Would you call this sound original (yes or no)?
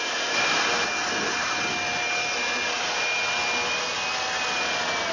yes